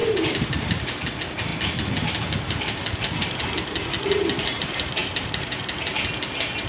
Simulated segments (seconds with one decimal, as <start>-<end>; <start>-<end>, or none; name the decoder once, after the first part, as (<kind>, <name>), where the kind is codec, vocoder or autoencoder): 0.0-1.1 (vocoder, BigVGAN v2); 5.0-5.6